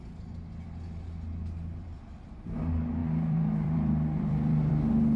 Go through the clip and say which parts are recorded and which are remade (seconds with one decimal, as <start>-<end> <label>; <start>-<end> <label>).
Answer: 0.0-3.0 recorded; 3.0-4.7 remade; 4.7-5.2 recorded